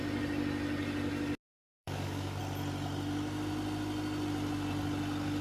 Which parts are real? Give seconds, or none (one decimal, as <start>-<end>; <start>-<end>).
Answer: 0.0-1.8; 2.4-5.4